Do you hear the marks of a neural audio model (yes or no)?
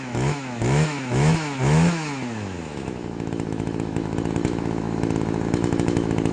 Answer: yes